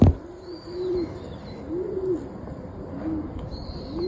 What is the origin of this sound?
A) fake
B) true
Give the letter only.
A